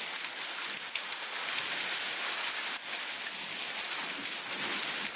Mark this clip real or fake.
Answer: real